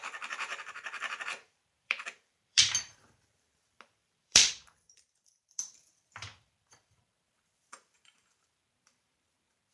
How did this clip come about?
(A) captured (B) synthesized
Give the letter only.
B